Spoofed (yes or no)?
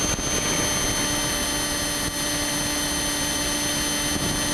no